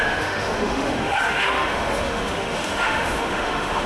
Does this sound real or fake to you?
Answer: fake